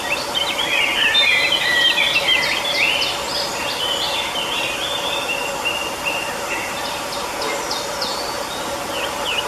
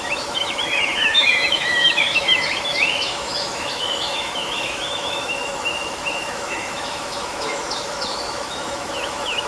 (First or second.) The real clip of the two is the first